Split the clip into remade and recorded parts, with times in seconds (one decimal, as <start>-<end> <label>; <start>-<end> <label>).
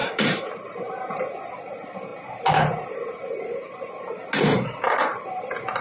0.0-1.6 remade; 1.6-2.1 recorded; 2.1-4.3 remade; 4.3-5.1 recorded; 5.1-5.8 remade